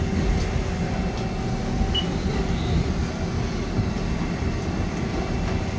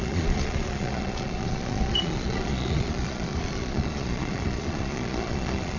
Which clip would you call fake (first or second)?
second